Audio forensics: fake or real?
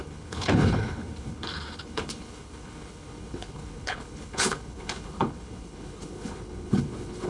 fake